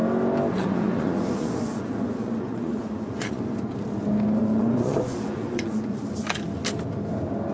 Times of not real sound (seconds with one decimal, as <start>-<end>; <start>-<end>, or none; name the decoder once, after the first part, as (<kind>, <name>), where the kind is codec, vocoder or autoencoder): 0.6-3.4 (vocoder, Vocos); 4.4-6.0